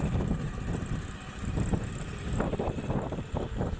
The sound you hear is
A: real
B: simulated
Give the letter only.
A